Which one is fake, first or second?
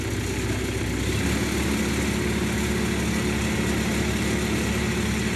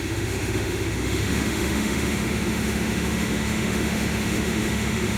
second